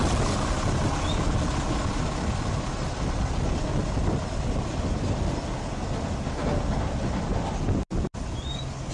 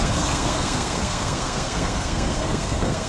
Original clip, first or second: first